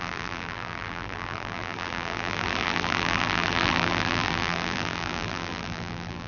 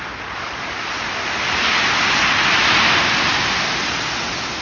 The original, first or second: second